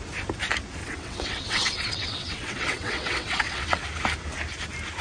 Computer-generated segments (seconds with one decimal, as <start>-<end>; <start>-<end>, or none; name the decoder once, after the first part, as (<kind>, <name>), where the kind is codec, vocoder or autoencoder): 0.8-3.8 (vocoder, WaveNeXt)